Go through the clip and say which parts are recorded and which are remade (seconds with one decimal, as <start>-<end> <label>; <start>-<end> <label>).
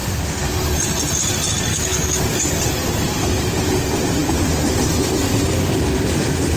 0.0-1.7 recorded; 1.7-2.6 remade; 2.6-6.6 recorded